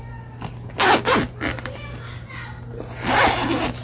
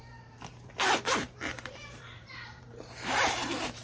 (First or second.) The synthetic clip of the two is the second